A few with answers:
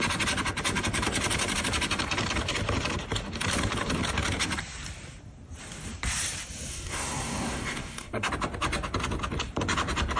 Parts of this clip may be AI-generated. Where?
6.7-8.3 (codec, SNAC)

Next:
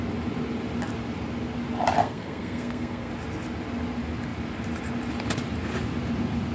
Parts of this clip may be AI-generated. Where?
2.0-3.1 (codec, SNAC)